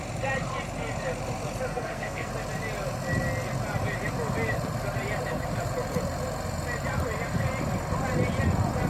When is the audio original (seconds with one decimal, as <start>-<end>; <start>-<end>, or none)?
0.0-1.7; 2.3-8.9